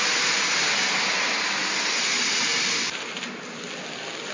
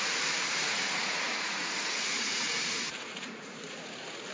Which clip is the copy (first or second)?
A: second